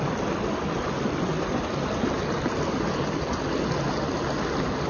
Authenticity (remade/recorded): recorded